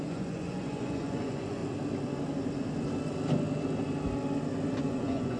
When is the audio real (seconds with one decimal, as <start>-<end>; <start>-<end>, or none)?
1.6-4.8